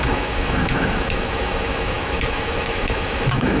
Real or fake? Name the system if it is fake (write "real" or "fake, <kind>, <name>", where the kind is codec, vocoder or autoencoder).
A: fake, autoencoder, DAC-VAE